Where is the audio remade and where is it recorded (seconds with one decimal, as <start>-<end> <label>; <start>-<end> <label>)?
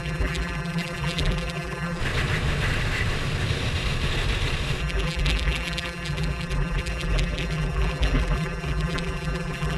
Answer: 0.0-2.0 remade; 2.0-4.8 recorded; 4.8-9.8 remade